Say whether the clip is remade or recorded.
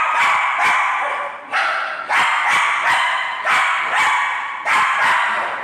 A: recorded